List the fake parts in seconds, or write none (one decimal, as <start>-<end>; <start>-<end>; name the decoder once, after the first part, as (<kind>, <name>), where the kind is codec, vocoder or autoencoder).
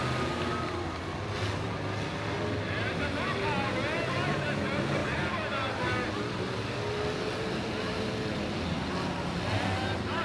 none